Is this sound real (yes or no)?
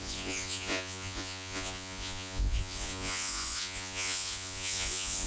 no